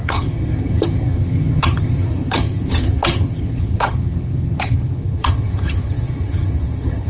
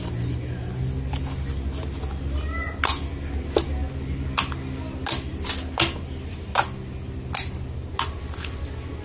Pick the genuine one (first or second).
second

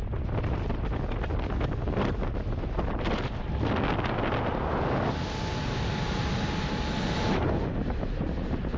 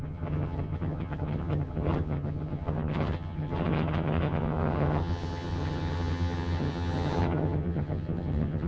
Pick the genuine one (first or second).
first